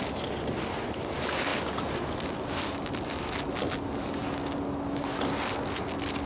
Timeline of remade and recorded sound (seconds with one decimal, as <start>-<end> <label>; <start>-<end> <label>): 0.0-6.3 recorded